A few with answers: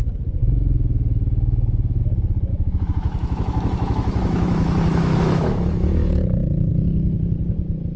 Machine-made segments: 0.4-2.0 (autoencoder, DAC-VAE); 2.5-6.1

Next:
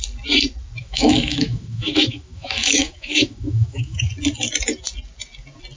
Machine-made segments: 0.8-4.1 (autoencoder, DAC-VAE)